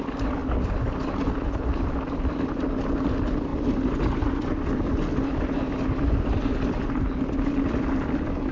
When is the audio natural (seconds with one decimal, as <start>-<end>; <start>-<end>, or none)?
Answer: 0.0-8.5